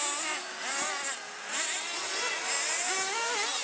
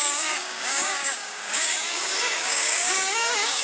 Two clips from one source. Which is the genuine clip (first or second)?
first